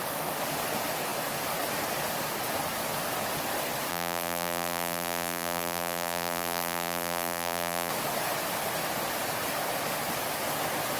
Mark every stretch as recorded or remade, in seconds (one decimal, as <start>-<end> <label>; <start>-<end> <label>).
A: 0.0-3.9 recorded; 3.9-7.9 remade; 7.9-11.0 recorded